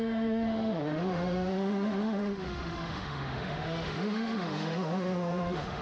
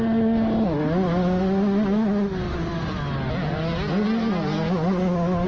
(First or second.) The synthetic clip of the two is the first